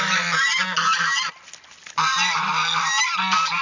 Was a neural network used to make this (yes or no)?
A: yes